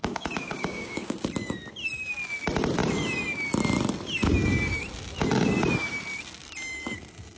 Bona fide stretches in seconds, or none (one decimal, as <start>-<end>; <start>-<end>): 1.3-7.4